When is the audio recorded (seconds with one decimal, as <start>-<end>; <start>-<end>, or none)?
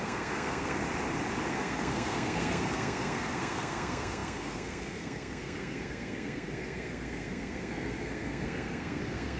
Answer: 0.8-1.5